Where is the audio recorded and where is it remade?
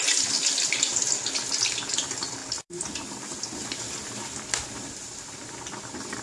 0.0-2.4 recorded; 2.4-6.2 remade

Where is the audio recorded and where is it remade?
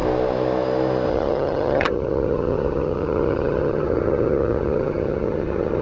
0.0-1.1 recorded; 1.1-5.8 remade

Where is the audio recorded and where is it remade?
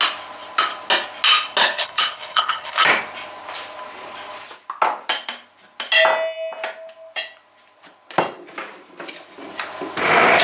0.0-1.6 recorded; 1.6-2.8 remade; 2.8-10.4 recorded